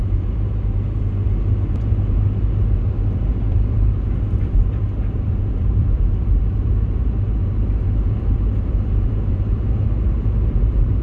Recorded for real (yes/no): no